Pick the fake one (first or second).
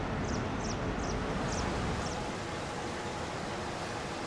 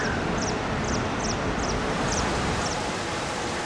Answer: second